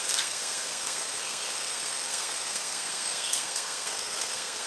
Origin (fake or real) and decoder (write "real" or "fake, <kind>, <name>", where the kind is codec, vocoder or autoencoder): fake, codec, SNAC